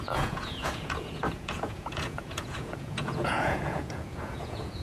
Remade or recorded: remade